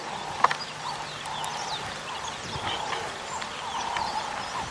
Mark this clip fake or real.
real